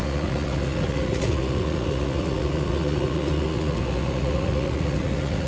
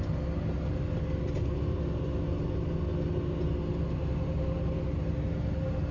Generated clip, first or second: first